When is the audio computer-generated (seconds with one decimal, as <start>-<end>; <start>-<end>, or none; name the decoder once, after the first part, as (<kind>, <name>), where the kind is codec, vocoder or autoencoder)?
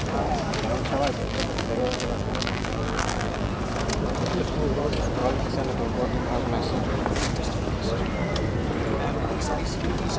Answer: 1.2-3.5 (vocoder, BigVGAN v2)